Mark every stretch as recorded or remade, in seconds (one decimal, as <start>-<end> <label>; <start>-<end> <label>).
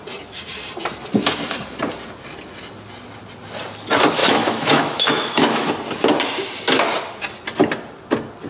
0.0-4.2 recorded; 4.2-5.7 remade; 5.7-8.5 recorded